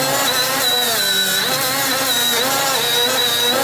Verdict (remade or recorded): recorded